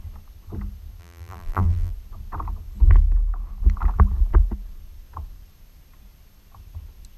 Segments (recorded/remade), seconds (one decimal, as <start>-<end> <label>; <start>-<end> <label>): 0.0-1.0 recorded; 1.0-1.9 remade; 1.9-7.2 recorded